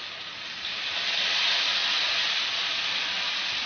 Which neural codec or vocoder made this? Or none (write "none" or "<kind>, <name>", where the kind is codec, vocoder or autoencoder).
none